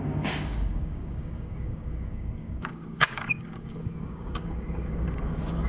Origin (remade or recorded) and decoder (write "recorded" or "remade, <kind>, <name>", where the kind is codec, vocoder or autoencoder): remade, codec, DAC